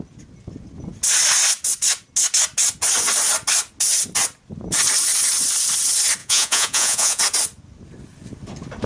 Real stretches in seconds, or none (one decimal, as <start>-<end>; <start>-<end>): 0.0-6.2; 7.2-8.9